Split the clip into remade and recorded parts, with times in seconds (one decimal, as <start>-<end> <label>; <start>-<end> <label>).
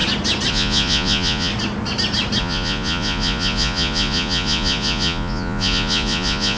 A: 0.0-0.5 recorded; 0.5-1.5 remade; 1.5-2.4 recorded; 2.4-6.6 remade